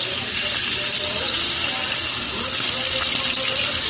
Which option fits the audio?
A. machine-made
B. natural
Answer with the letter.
B